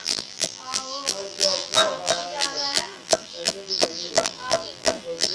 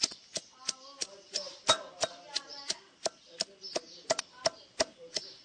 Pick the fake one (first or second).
first